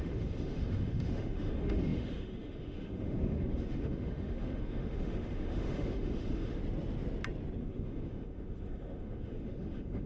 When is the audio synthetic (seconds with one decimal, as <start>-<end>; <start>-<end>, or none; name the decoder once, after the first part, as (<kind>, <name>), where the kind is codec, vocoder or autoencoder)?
0.0-6.6 (autoencoder, DAC-VAE); 7.6-10.1